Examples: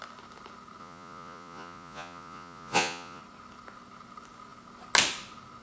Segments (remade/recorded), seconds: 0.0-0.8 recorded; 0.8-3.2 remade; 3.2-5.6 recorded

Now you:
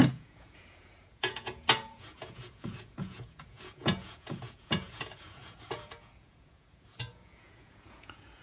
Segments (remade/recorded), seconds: 0.0-8.4 remade

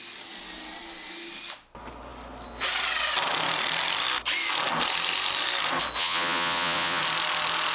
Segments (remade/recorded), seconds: 0.0-6.0 recorded; 6.0-7.0 remade; 7.0-7.7 recorded

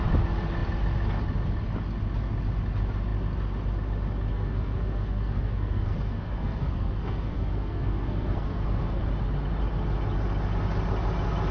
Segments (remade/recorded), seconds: 0.0-4.3 recorded; 4.3-9.0 remade; 9.0-11.5 recorded

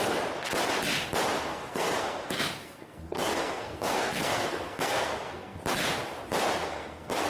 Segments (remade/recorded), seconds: 0.0-1.5 recorded; 1.5-5.6 remade; 5.6-6.6 recorded; 6.6-7.3 remade

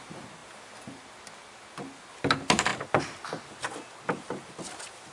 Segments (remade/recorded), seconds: 0.0-5.1 recorded